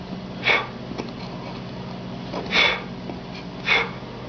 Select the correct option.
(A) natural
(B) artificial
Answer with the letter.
A